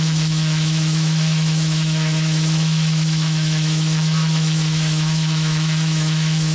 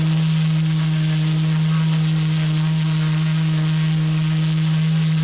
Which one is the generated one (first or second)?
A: first